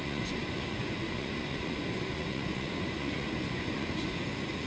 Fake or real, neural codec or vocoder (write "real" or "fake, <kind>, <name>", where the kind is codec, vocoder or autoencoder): fake, vocoder, Vocos